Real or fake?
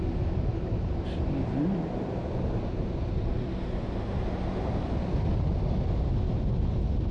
real